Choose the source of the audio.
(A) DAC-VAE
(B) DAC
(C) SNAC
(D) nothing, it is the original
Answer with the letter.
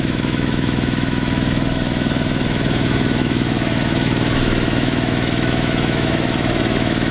A